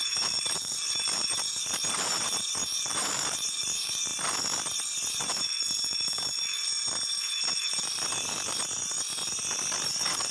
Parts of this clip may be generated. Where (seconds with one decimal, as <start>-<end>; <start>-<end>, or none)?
0.0-4.1; 5.4-6.2; 9.9-10.3